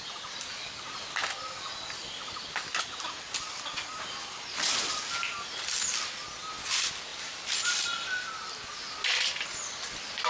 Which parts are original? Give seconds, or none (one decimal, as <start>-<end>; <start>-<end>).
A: 0.0-10.3